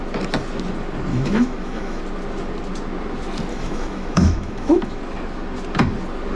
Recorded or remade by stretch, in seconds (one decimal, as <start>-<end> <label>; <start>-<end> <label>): 0.0-1.1 recorded; 1.1-2.0 remade; 2.0-3.5 recorded; 3.5-5.0 remade; 5.0-6.4 recorded